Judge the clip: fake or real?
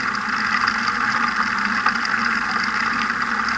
real